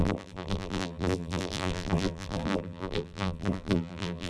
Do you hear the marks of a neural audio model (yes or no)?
yes